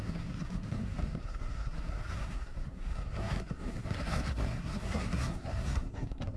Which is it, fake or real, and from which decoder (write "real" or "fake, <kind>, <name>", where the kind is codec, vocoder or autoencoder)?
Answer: fake, codec, SNAC